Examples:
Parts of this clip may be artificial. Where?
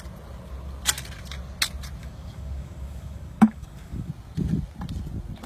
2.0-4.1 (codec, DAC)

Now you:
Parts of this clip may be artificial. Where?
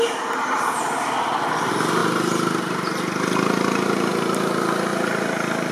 none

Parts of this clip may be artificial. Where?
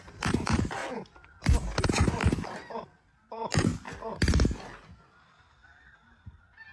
0.0-0.8 (vocoder, BigVGAN v2); 2.6-3.7; 5.2-6.7